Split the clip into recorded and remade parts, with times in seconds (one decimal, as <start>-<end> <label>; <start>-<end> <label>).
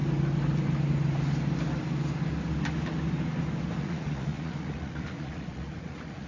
0.0-3.8 recorded; 3.8-6.3 remade